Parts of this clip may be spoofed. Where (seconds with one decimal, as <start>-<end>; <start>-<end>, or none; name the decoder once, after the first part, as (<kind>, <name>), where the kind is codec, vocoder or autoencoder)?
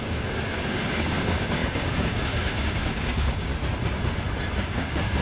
0.0-3.5 (codec, DAC); 4.6-5.2